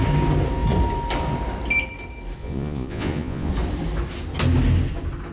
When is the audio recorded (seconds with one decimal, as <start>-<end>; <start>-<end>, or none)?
0.0-2.4; 3.5-5.3